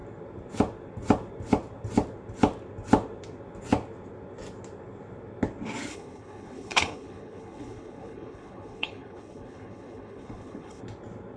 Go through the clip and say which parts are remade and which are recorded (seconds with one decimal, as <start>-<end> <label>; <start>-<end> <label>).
0.0-5.9 recorded; 5.9-10.8 remade; 10.8-11.4 recorded